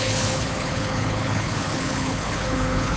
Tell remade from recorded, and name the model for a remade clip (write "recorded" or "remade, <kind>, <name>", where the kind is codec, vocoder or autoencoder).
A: remade, codec, HILCodec